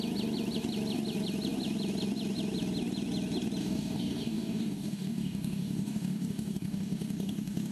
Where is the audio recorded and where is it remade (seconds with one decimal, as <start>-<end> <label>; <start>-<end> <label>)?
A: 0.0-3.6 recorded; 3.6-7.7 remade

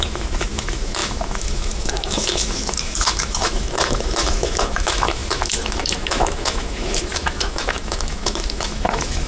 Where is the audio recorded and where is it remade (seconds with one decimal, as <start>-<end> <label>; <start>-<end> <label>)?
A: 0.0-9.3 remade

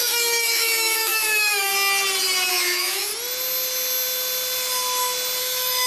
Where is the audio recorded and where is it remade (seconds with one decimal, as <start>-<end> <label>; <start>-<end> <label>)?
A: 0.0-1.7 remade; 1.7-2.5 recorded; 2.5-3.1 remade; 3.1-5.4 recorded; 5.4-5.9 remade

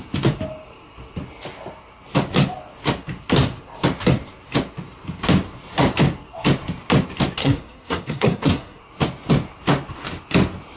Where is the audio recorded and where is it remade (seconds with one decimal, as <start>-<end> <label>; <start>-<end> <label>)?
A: 0.0-7.4 recorded; 7.4-8.8 remade; 8.8-10.8 recorded

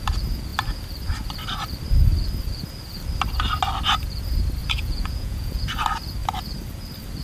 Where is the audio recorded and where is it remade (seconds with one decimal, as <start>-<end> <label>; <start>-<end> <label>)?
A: 0.0-4.6 recorded; 4.6-5.6 remade; 5.6-7.2 recorded

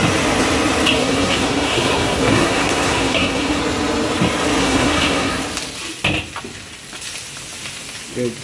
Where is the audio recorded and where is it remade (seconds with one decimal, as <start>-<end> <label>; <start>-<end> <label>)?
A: 0.0-1.0 recorded; 1.0-3.6 remade; 3.6-4.6 recorded; 4.6-5.4 remade; 5.4-8.4 recorded

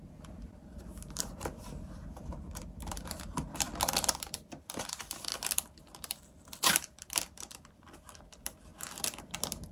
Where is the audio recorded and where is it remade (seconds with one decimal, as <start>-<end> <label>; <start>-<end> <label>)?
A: 0.0-5.3 remade; 5.3-5.8 recorded; 5.8-8.7 remade; 8.7-9.7 recorded

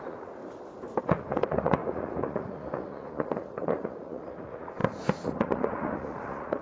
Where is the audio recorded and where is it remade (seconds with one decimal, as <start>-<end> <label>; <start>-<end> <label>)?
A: 0.0-0.4 remade; 0.4-1.0 recorded; 1.0-6.6 remade